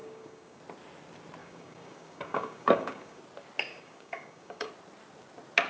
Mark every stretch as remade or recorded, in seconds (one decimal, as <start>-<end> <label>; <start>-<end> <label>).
0.0-0.6 remade; 0.6-1.4 recorded; 1.4-3.2 remade; 3.2-3.7 recorded; 3.7-4.7 remade; 4.7-5.7 recorded